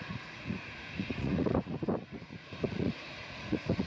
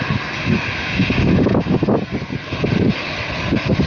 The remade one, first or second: first